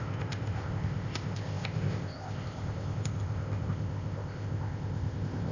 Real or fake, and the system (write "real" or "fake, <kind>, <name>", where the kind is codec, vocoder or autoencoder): fake, codec, ZipCodec